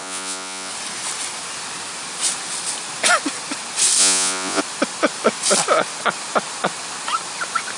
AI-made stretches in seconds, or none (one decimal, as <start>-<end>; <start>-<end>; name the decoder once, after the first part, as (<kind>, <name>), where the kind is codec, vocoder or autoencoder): 0.0-0.7 (vocoder, Vocos); 4.0-4.6